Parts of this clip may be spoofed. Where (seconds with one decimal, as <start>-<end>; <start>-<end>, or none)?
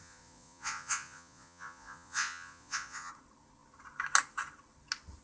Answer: 0.0-3.1